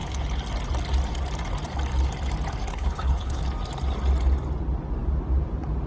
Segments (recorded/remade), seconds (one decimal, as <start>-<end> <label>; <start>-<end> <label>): 0.0-2.7 recorded; 2.7-3.4 remade; 3.4-5.9 recorded